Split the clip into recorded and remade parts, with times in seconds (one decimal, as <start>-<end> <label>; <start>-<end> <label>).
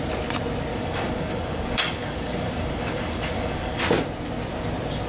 0.0-0.7 recorded; 0.7-3.8 remade; 3.8-5.1 recorded